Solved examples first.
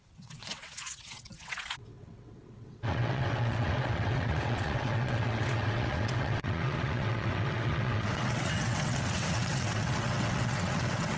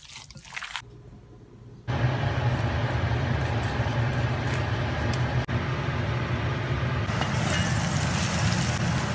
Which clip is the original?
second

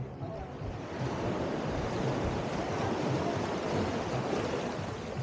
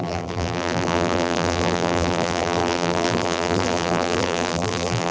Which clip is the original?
first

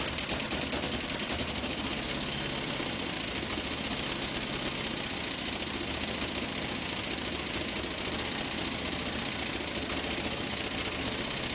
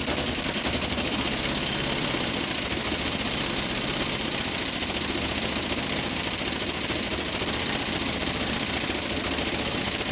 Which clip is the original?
first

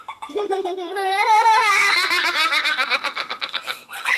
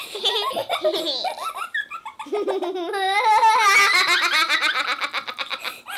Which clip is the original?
second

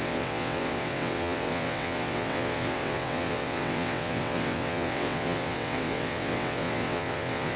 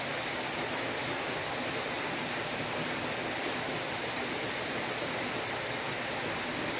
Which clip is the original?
second